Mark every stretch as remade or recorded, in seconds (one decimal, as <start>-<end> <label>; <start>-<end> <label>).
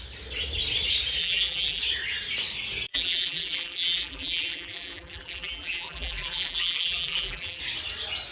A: 0.0-1.2 recorded; 1.2-1.8 remade; 1.8-2.9 recorded; 2.9-7.6 remade; 7.6-8.3 recorded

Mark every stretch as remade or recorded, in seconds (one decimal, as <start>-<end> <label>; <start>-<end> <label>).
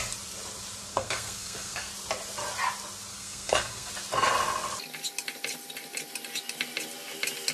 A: 0.0-0.9 recorded; 0.9-1.9 remade; 1.9-3.1 recorded; 3.1-3.9 remade; 3.9-7.5 recorded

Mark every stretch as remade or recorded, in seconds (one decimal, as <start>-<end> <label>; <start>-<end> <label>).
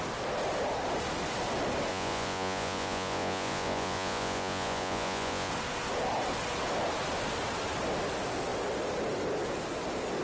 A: 0.0-1.9 recorded; 1.9-5.5 remade; 5.5-10.2 recorded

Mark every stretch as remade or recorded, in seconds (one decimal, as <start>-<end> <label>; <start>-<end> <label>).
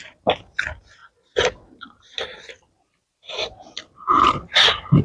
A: 0.0-5.0 recorded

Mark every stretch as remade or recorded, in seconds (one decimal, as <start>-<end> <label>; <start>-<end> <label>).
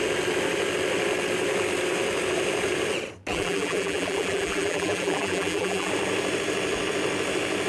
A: 0.0-3.3 recorded; 3.3-5.9 remade; 5.9-7.7 recorded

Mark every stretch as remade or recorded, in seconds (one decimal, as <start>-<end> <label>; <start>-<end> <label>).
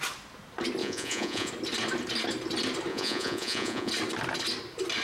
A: 0.0-0.8 recorded; 0.8-1.5 remade; 1.5-2.9 recorded; 2.9-3.9 remade; 3.9-5.0 recorded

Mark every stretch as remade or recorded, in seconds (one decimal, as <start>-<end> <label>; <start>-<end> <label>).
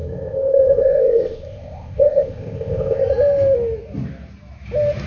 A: 0.0-3.0 remade; 3.0-5.1 recorded